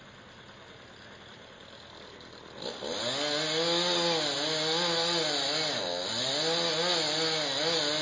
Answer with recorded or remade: recorded